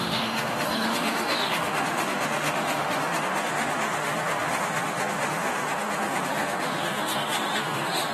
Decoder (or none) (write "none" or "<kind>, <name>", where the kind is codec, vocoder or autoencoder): autoencoder, DAC-VAE